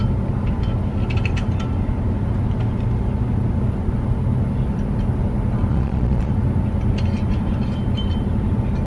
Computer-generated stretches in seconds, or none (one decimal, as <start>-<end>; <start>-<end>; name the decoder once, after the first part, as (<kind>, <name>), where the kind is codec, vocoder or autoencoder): 5.7-6.3 (vocoder, Vocos)